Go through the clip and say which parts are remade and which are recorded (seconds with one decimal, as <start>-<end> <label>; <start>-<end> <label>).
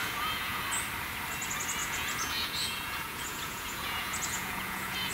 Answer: 0.0-0.6 remade; 0.6-1.8 recorded; 1.8-5.1 remade